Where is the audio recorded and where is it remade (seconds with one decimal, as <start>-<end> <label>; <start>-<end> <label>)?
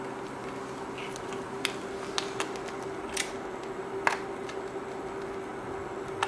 0.0-6.3 recorded